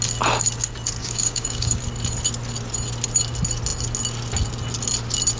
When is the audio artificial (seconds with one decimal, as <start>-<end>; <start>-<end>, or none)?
1.0-1.8

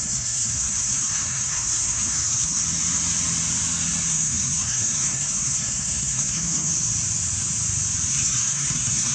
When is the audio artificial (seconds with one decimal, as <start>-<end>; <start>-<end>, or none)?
0.0-2.6; 4.1-6.7; 8.1-9.1

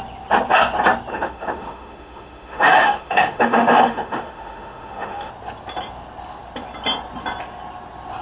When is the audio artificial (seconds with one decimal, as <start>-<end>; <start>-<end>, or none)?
1.1-5.3

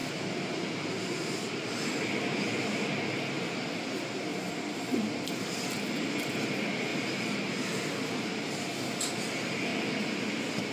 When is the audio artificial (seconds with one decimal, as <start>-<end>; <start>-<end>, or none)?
4.3-6.1; 6.9-7.9

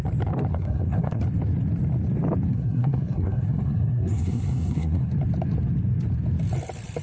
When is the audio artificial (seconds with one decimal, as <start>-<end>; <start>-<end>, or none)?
0.5-1.2; 2.5-5.1

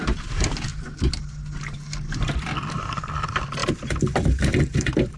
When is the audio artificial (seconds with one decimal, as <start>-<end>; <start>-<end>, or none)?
0.0-0.7; 2.2-5.2